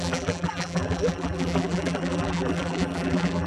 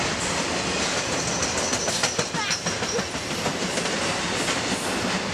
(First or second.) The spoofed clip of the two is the first